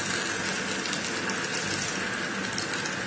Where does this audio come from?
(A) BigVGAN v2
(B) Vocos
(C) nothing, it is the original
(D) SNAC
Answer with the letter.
C